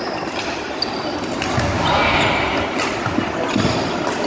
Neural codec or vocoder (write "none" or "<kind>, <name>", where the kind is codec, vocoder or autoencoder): none